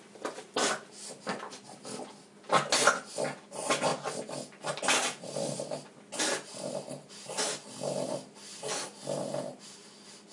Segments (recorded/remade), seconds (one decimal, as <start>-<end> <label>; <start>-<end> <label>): 0.0-10.3 recorded

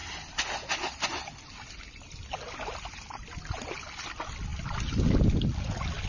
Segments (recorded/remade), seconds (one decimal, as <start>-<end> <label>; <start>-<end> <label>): 0.0-6.1 recorded